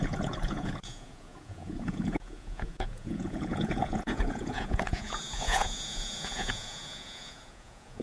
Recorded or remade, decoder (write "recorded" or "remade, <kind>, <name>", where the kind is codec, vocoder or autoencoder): remade, vocoder, Vocos